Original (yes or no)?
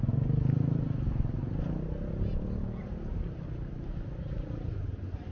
yes